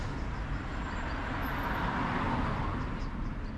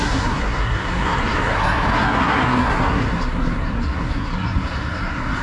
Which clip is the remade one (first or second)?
second